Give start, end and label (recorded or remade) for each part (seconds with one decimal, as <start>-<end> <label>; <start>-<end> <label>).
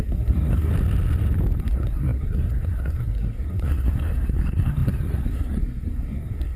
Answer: 0.0-0.7 remade; 0.7-1.6 recorded; 1.6-6.6 remade